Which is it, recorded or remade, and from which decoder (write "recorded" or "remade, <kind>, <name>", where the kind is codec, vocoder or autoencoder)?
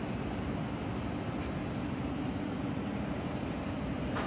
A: recorded